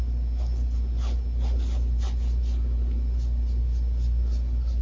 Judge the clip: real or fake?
real